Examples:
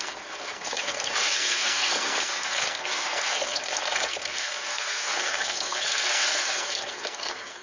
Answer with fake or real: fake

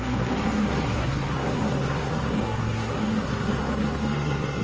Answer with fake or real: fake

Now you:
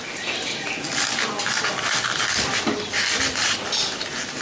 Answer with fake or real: real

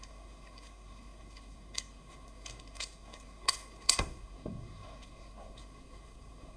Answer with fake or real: fake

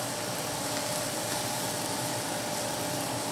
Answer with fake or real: real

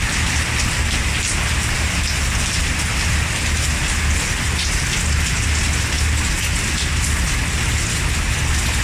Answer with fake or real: real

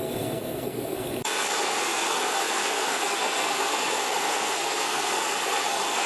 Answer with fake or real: fake